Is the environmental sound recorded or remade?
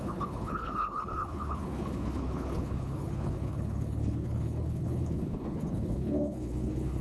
remade